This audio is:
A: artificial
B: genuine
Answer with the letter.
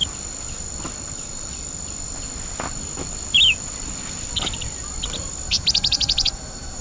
A